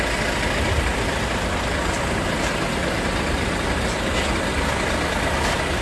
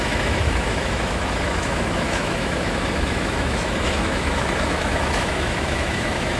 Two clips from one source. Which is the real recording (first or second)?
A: first